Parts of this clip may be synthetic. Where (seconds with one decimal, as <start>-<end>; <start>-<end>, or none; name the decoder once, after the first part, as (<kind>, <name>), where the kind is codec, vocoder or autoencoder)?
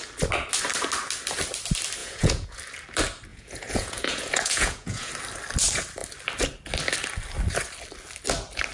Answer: 2.0-2.6 (vocoder, Vocos); 3.3-5.1